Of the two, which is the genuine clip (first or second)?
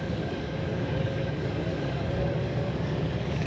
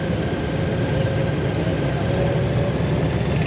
second